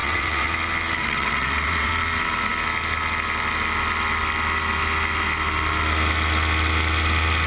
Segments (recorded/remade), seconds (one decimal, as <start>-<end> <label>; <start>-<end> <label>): 0.0-0.5 remade; 0.5-1.0 recorded; 1.0-1.9 remade; 1.9-7.5 recorded